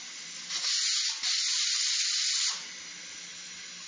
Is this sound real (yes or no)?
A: yes